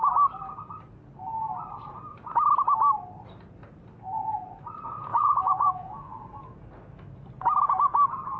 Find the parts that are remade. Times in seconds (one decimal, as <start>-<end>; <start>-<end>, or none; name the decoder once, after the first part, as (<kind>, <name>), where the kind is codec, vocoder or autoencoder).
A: 5.1-6.2 (vocoder, Vocos)